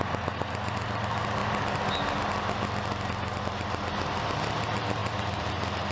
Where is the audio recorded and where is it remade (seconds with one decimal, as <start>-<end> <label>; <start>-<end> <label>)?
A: 0.0-5.0 recorded; 5.0-5.5 remade; 5.5-5.9 recorded